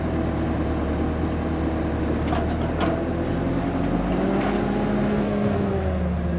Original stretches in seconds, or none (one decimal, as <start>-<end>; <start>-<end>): 0.0-5.1; 5.7-6.4